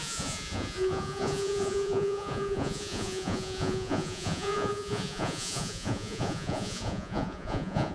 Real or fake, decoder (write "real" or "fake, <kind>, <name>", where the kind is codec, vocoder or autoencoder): fake, vocoder, Vocos